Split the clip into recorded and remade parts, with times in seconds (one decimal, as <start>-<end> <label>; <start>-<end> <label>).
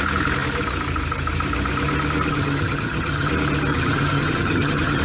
0.0-2.3 recorded; 2.3-3.3 remade; 3.3-3.7 recorded; 3.7-5.0 remade